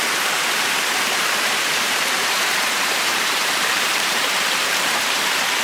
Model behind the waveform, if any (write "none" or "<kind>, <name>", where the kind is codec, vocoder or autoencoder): vocoder, BigVGAN v2